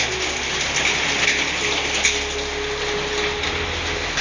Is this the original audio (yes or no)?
yes